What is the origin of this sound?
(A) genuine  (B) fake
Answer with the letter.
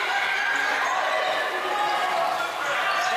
A